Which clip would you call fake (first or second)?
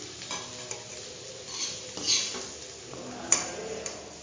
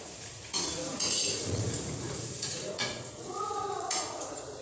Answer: second